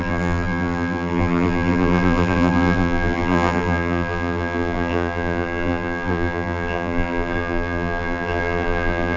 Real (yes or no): no